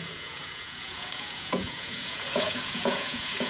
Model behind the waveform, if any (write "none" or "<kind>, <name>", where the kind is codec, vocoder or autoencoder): vocoder, Vocos